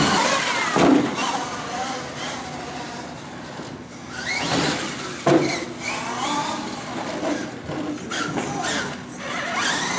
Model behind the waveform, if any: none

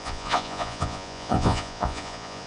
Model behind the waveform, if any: vocoder, Vocos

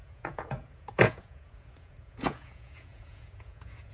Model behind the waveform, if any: vocoder, Vocos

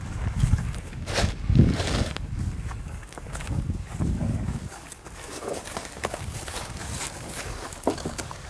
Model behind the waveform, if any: codec, DAC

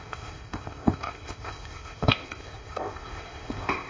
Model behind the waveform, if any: codec, ZipCodec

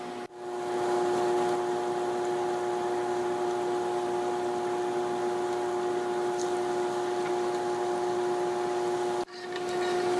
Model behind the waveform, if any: none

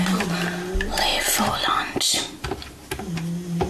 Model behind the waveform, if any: none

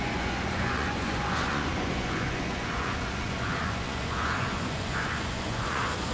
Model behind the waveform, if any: vocoder, Vocos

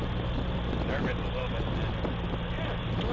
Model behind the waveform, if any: none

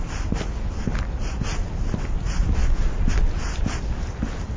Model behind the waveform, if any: none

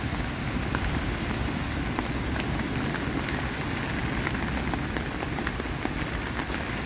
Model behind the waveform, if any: none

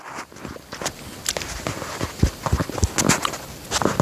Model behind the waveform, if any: none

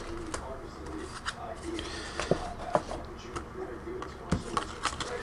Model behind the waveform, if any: none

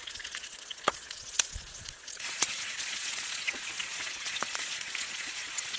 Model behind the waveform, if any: vocoder, Vocos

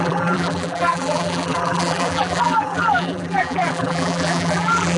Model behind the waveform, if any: vocoder, BigVGAN v2